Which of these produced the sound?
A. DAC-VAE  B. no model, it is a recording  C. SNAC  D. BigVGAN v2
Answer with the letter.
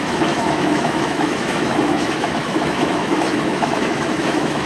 A